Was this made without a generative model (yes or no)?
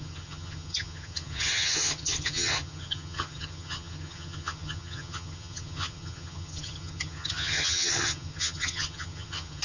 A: no